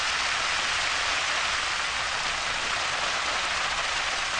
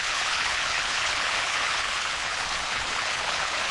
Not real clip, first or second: second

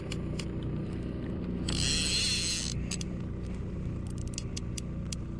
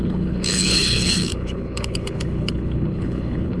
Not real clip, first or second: second